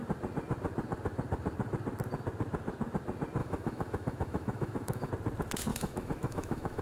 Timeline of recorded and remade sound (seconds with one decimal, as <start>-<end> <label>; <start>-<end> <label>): 0.0-3.4 recorded; 3.4-5.1 remade; 5.1-5.7 recorded; 5.7-6.8 remade